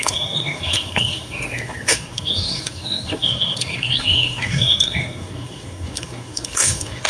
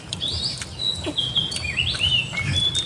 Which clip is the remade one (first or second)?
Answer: first